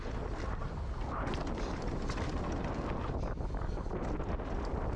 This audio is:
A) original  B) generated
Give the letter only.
A